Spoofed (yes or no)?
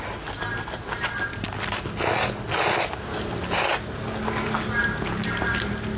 no